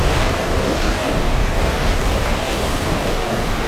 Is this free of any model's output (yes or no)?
no